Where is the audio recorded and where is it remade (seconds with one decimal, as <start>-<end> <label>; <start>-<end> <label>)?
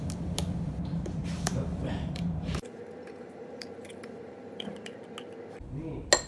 0.0-1.2 recorded; 1.2-5.0 remade; 5.0-6.3 recorded